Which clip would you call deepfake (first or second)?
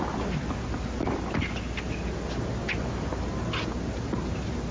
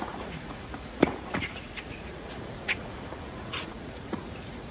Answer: second